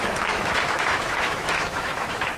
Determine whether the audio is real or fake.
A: fake